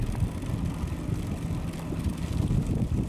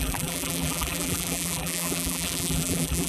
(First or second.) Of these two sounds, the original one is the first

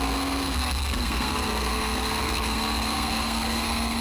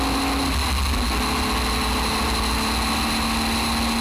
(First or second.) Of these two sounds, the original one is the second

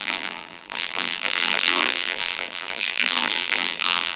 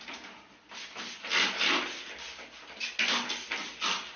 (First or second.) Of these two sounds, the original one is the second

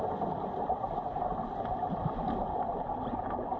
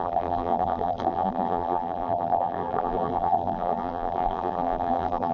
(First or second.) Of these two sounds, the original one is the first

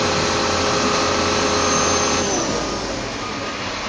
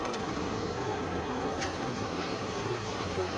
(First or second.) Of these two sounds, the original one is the first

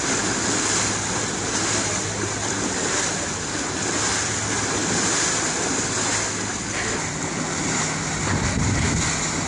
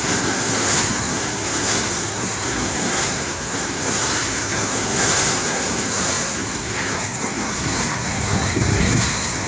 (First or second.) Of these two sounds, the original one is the first